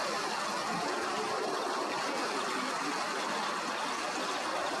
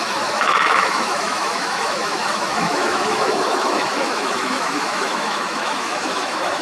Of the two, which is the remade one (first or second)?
second